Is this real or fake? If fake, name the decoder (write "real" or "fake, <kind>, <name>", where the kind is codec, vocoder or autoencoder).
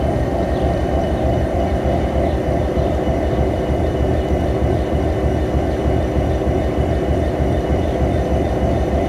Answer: fake, vocoder, BigVGAN v2